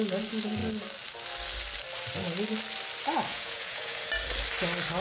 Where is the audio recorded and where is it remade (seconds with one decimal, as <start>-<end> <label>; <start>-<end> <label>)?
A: 0.0-3.3 recorded; 3.3-4.1 remade; 4.1-5.0 recorded